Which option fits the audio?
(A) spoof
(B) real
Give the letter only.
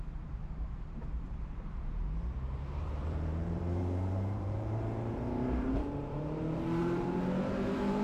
A